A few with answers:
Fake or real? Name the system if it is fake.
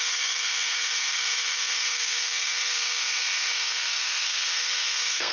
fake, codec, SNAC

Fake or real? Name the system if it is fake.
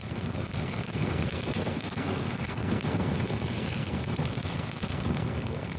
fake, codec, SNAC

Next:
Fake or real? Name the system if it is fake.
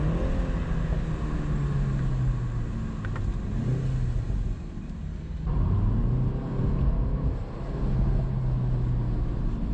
real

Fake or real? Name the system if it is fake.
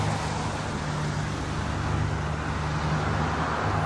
real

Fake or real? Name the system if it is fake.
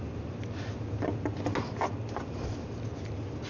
real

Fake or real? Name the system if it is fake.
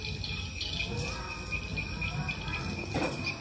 real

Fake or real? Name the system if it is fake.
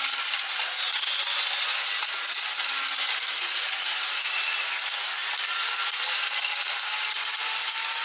real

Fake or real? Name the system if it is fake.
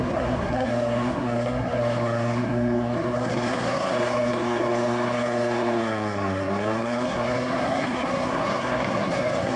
fake, codec, SNAC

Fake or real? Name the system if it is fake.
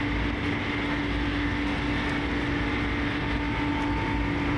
real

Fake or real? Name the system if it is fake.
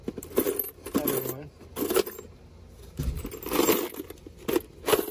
real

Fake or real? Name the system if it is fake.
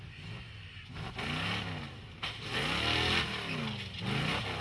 real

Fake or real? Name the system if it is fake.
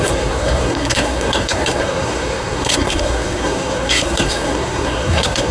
fake, codec, SNAC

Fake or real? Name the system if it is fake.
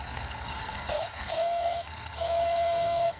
fake, codec, SNAC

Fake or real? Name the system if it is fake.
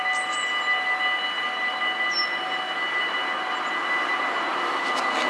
real